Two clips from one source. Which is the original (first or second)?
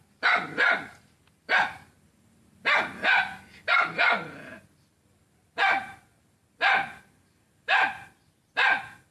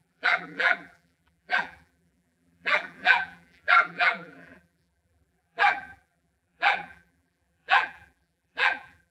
first